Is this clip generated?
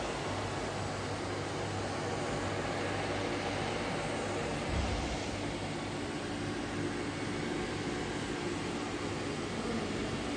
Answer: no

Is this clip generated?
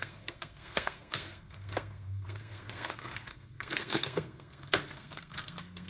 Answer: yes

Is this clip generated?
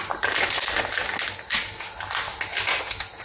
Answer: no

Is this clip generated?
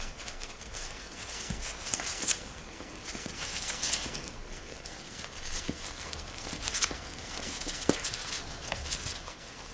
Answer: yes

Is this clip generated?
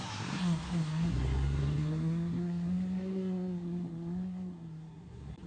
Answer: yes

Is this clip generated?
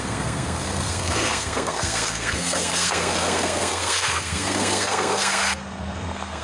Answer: yes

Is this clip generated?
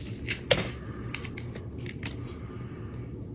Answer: no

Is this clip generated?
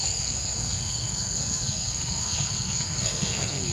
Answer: yes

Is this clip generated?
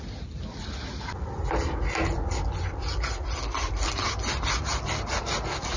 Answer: no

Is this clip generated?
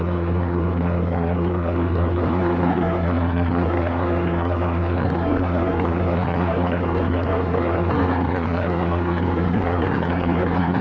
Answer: yes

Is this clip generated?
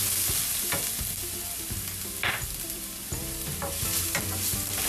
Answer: no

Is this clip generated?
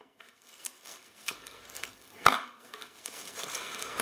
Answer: yes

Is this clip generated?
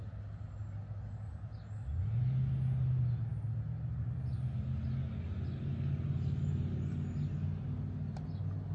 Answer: no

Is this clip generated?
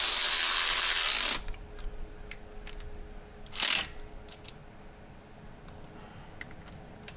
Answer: no